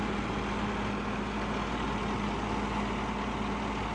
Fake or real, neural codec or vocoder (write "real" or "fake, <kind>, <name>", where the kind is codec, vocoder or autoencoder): real